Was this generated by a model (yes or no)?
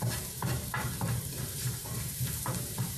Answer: yes